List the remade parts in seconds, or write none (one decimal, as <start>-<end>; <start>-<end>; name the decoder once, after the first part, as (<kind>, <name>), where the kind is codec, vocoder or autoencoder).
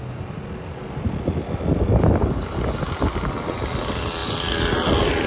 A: none